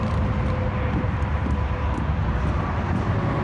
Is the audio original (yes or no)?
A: yes